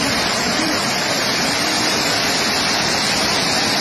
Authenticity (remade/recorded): recorded